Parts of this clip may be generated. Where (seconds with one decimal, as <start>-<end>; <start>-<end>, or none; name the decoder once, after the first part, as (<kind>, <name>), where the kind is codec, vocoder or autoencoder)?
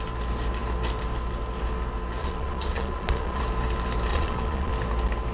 2.2-3.4 (vocoder, Vocos); 4.1-4.7